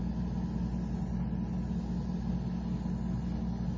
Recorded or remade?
recorded